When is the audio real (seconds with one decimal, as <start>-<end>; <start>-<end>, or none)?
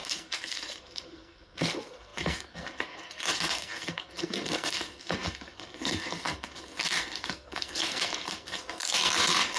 none